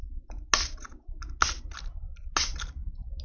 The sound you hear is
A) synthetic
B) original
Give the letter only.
B